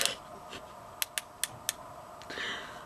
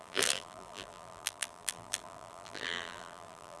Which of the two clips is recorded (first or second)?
first